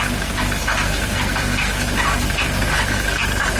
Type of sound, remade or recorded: remade